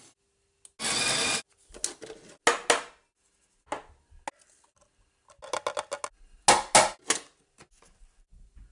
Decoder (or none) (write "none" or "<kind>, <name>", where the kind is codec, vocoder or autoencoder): none